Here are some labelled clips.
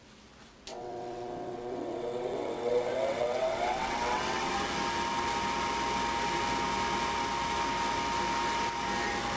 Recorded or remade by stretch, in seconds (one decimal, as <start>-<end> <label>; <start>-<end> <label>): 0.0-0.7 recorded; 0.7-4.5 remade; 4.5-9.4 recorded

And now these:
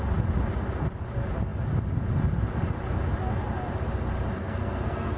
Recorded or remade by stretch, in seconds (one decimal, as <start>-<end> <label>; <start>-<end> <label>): 0.0-4.4 recorded; 4.4-5.2 remade

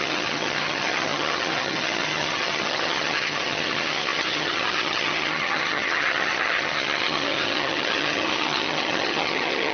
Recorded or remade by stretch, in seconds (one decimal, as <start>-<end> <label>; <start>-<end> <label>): 0.0-9.7 remade